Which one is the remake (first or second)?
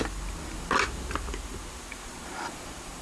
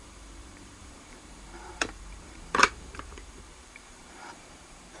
second